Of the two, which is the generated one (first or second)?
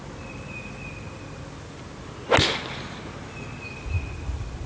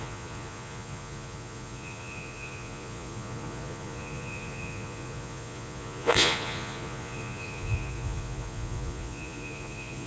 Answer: second